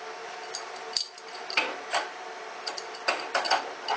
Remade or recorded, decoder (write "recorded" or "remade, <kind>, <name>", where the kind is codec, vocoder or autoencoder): remade, vocoder, BigVGAN v2